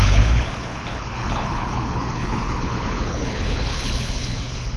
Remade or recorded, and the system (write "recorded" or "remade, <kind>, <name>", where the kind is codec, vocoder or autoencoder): remade, codec, HILCodec